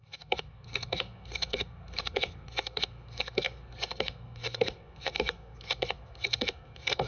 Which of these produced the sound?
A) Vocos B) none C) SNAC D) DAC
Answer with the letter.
C